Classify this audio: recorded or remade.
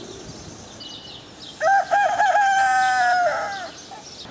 recorded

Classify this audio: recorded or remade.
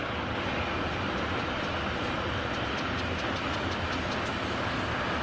recorded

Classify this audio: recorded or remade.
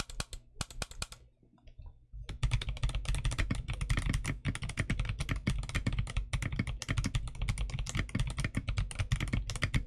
recorded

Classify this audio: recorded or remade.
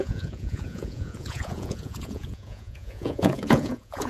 remade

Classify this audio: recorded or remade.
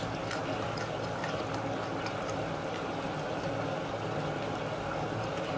recorded